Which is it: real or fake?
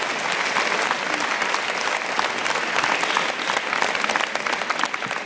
real